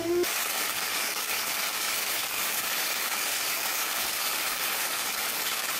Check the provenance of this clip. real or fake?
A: fake